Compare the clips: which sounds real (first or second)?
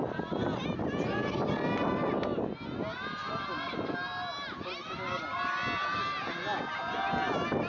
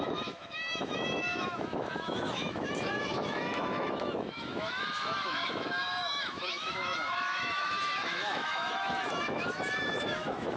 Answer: first